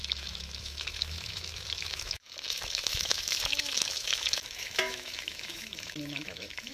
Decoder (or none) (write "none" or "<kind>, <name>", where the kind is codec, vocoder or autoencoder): autoencoder, DAC-VAE